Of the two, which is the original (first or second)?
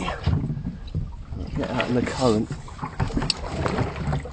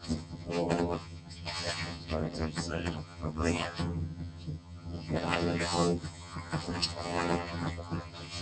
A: first